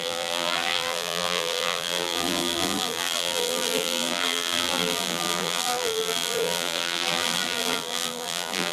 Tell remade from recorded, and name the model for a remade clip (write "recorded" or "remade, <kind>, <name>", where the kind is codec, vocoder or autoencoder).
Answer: remade, vocoder, BigVGAN v2